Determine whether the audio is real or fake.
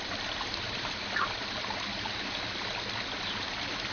real